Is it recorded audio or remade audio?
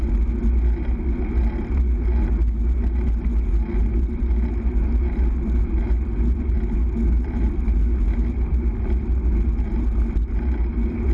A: recorded